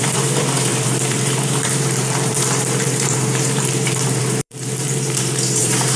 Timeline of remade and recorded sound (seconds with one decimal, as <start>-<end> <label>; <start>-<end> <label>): 0.0-6.0 remade